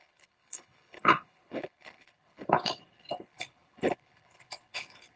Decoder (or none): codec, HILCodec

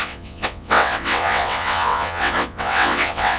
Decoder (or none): vocoder, WaveNeXt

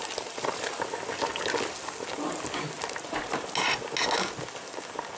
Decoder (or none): none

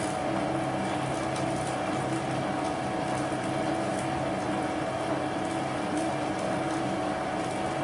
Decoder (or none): none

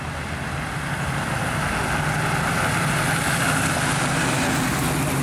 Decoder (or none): none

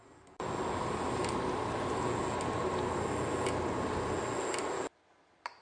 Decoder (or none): none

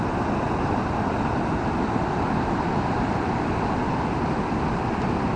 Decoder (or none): none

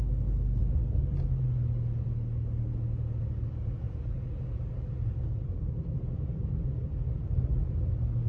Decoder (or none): none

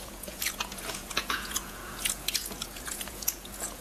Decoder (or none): vocoder, Vocos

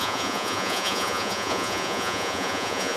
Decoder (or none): vocoder, Vocos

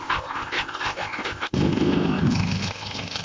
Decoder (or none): codec, ZipCodec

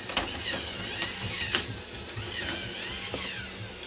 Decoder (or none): none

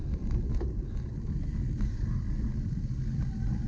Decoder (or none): none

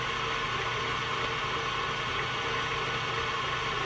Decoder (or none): none